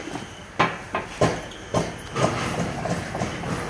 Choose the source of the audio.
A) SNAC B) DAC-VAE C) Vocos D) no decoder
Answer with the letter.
D